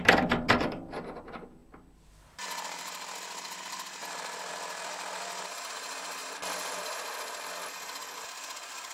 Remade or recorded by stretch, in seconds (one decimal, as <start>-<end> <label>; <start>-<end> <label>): 0.0-8.9 recorded

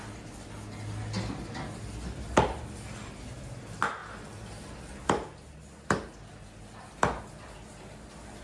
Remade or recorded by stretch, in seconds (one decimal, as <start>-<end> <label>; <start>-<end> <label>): 0.0-8.4 recorded

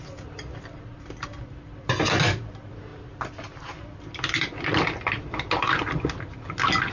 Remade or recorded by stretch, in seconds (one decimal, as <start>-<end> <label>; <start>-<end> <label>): 0.0-6.9 recorded

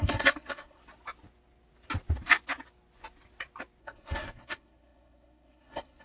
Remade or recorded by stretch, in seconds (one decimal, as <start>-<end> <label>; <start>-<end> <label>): 0.0-0.8 remade; 0.8-3.8 recorded; 3.8-6.0 remade